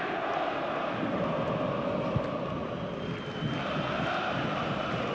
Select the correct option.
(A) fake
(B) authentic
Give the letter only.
B